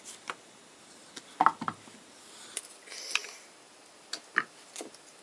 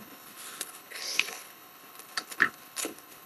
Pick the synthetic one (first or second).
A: second